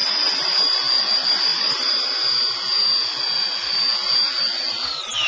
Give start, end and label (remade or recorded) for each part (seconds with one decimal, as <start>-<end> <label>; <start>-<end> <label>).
0.0-0.5 remade; 0.5-5.3 recorded